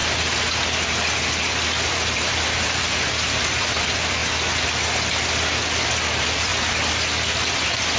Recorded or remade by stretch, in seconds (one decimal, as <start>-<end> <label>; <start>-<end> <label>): 0.0-1.9 recorded; 1.9-4.2 remade; 4.2-5.9 recorded; 5.9-6.5 remade; 6.5-7.5 recorded; 7.5-8.0 remade